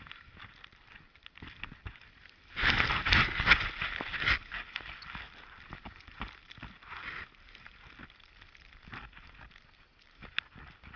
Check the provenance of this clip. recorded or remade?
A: recorded